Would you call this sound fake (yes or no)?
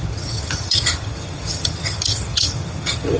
yes